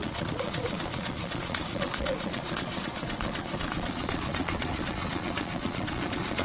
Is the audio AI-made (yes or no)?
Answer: yes